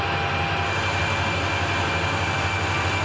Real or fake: real